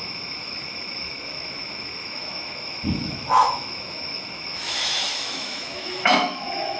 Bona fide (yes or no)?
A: no